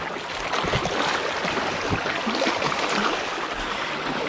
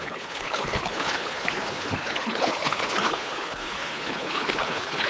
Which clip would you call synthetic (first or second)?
second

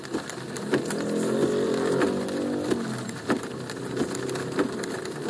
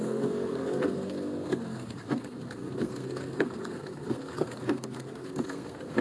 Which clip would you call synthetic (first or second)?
second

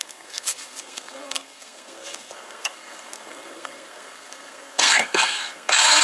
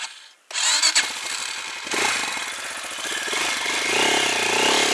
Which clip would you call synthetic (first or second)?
first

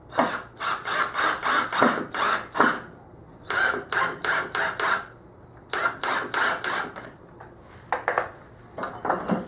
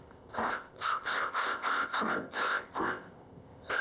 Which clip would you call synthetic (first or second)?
second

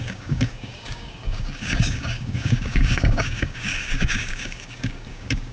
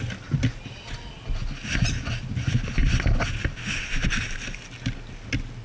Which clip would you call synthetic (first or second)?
first